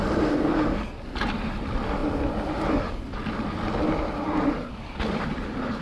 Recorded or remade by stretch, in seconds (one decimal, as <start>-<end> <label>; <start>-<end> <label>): 0.0-5.8 recorded